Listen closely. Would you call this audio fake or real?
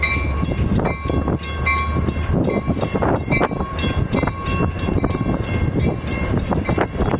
real